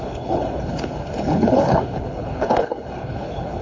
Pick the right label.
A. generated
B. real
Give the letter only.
A